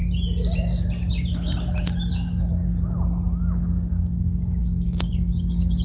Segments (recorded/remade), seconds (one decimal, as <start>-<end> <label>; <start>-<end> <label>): 0.0-2.5 recorded; 2.5-5.8 remade